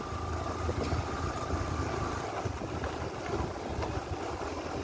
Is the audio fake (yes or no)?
no